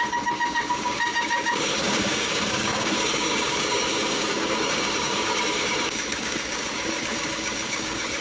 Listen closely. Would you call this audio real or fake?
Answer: fake